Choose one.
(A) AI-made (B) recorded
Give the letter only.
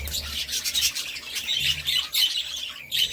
B